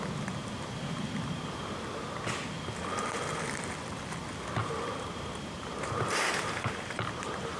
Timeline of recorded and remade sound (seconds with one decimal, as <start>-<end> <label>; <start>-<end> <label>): 0.0-4.6 recorded; 4.6-7.6 remade